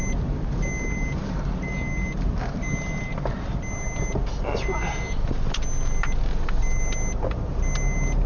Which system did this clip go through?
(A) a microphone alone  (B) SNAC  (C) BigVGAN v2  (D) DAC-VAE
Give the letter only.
A